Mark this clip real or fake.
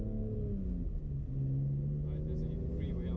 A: real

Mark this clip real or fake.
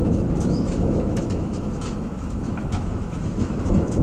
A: fake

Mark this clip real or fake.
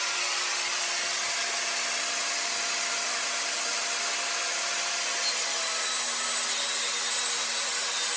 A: real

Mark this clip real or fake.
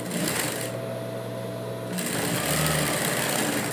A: real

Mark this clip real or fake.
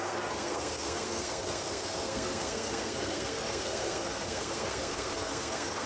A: fake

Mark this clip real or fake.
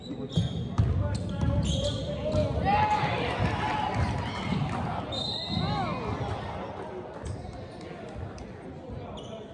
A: real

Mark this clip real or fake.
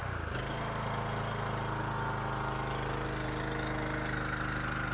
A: real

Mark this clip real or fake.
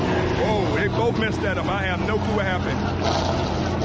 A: real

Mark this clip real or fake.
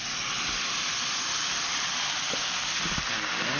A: real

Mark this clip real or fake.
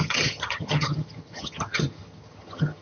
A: fake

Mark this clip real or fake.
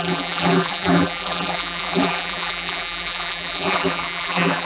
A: fake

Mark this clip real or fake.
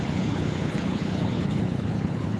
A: fake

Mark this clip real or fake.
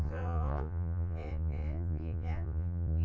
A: fake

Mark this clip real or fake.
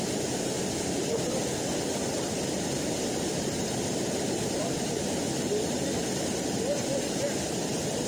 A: real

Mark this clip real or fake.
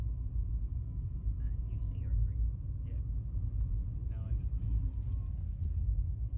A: real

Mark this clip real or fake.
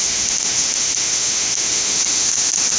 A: fake